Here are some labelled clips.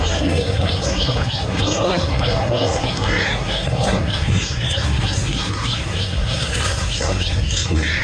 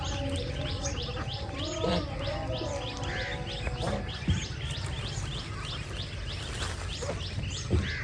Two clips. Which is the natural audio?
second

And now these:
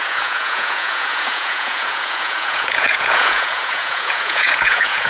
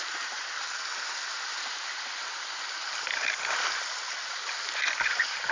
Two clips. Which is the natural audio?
second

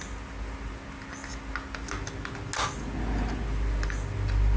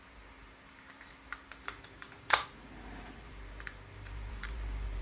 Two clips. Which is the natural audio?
first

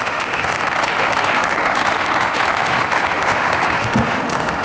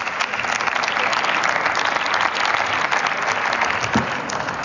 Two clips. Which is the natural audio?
second